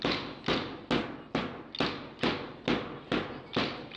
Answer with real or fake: real